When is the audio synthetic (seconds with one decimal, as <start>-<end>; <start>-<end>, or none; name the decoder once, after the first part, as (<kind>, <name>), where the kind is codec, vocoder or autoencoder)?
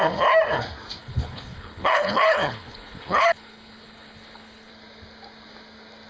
1.0-4.7 (codec, HILCodec)